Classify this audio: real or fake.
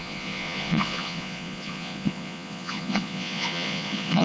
fake